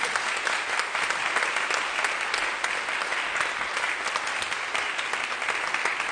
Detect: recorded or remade recorded